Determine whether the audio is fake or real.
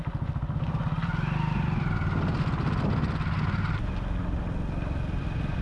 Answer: real